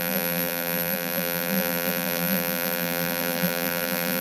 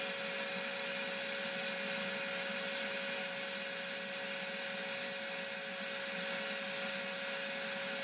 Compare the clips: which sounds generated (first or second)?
first